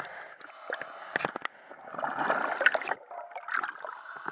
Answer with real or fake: real